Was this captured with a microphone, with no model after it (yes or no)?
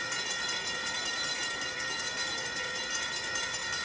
no